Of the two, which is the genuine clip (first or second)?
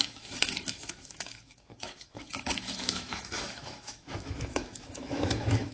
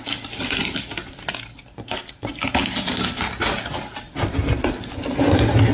second